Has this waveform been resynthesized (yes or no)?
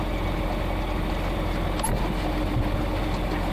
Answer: no